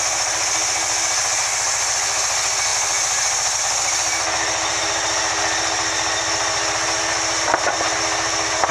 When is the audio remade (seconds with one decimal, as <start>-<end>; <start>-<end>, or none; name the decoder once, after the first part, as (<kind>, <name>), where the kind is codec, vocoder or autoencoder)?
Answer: none